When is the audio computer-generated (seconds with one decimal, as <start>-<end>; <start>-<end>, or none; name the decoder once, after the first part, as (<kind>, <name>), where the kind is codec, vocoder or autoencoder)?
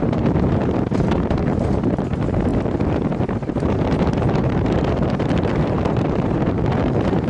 0.0-7.3 (vocoder, BigVGAN v2)